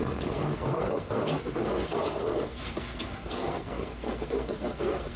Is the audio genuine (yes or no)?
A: no